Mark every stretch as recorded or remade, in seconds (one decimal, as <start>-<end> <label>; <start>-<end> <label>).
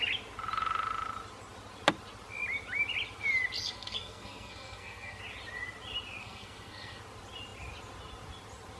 0.0-3.6 recorded; 3.6-5.2 remade; 5.2-6.2 recorded; 6.2-7.0 remade; 7.0-8.8 recorded